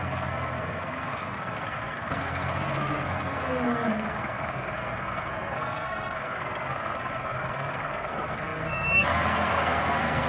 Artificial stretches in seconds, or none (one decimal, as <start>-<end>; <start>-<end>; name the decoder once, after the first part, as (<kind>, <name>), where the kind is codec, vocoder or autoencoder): 0.0-10.3 (codec, SNAC)